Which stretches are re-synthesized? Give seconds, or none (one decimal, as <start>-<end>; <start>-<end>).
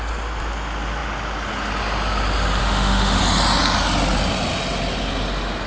2.6-3.2